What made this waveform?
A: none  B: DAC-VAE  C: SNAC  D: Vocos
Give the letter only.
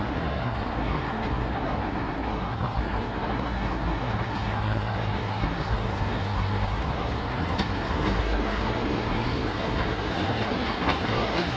C